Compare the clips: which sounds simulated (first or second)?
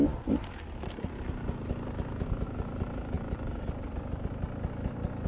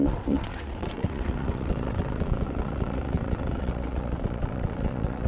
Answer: second